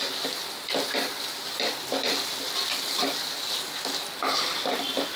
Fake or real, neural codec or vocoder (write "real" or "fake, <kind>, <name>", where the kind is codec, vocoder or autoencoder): fake, vocoder, BigVGAN v2